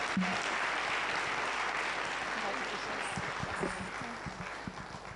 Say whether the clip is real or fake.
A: real